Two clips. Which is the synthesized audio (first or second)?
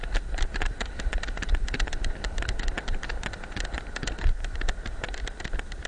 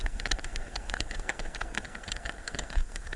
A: second